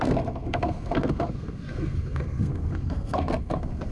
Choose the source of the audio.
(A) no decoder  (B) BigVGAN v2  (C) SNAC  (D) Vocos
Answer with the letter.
C